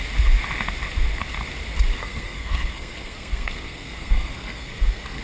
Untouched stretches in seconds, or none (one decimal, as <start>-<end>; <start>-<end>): 0.0-2.0

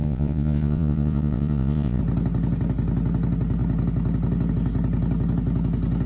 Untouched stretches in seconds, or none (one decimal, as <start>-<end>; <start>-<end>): 2.0-6.1